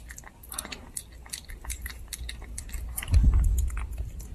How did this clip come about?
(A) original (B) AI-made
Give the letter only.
A